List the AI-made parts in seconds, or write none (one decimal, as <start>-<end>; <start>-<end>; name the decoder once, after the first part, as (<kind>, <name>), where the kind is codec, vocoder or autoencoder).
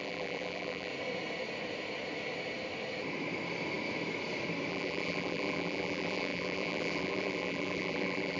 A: 0.0-0.9 (vocoder, BigVGAN v2); 4.7-8.4